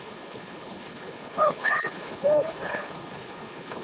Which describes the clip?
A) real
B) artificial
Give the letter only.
B